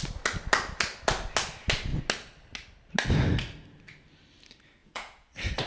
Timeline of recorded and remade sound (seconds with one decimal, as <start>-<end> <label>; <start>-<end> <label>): 0.0-4.8 recorded; 4.8-5.3 remade; 5.3-5.7 recorded